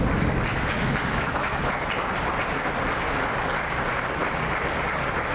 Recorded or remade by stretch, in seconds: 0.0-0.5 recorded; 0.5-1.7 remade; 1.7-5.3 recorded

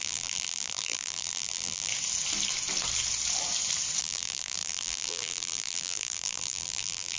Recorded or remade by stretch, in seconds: 0.0-1.9 remade; 1.9-4.0 recorded; 4.0-7.2 remade